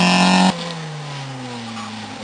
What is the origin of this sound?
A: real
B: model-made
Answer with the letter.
A